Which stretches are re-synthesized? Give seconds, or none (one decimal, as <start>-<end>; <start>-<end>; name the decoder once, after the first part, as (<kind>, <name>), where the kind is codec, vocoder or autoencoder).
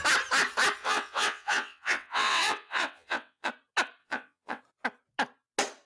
0.8-3.5 (vocoder, WaveNeXt); 4.0-4.6